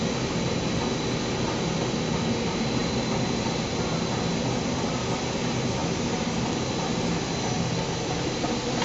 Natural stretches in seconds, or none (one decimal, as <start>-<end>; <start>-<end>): 0.0-8.8